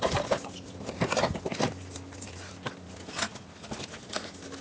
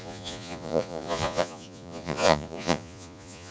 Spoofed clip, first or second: second